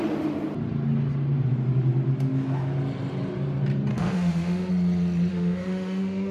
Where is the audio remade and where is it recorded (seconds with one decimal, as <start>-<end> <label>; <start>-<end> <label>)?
0.0-3.9 recorded; 3.9-4.7 remade; 4.7-5.3 recorded; 5.3-6.3 remade